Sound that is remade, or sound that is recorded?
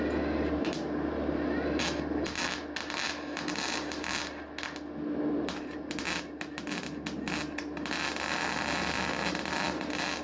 recorded